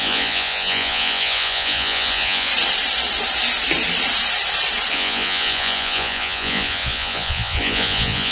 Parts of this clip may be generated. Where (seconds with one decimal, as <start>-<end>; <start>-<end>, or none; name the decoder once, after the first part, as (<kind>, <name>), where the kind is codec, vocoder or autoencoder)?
0.0-2.5 (vocoder, Vocos); 4.9-8.3